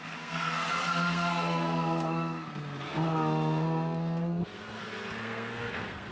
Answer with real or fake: fake